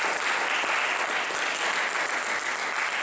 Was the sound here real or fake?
real